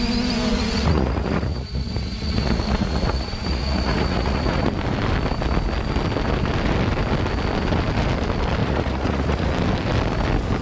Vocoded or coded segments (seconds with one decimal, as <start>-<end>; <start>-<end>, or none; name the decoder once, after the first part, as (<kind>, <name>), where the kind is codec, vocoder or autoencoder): 0.5-4.7 (vocoder, Vocos); 8.6-9.5